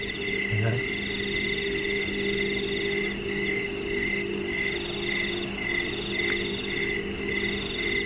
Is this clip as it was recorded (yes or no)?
yes